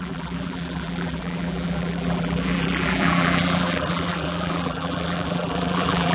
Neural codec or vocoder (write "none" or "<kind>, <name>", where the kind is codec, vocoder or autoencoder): vocoder, BigVGAN v2